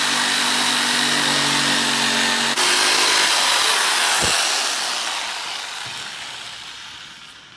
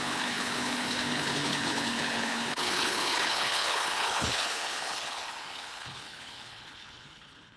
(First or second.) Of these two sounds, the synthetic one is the second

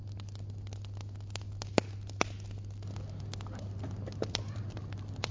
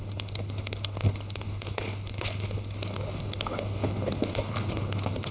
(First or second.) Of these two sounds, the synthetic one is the second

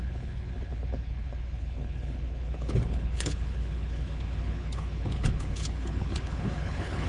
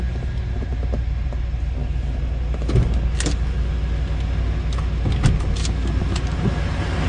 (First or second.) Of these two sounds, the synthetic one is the first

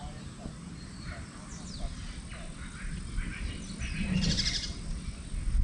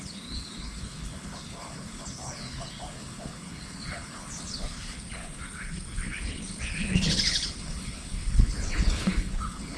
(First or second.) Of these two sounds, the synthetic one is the second